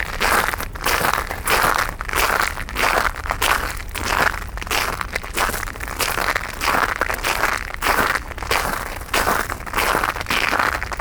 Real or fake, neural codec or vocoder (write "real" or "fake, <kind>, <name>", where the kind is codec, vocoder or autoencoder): real